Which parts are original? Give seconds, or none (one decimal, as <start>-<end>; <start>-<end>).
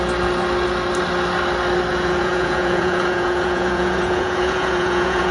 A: 0.0-1.9